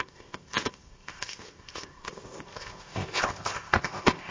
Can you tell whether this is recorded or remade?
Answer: remade